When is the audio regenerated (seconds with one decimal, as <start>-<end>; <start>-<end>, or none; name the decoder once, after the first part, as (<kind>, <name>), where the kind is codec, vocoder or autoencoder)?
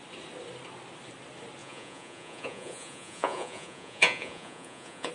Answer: 1.6-5.1 (vocoder, Vocos)